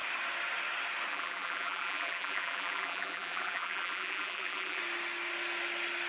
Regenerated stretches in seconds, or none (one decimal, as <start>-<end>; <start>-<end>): 1.1-4.8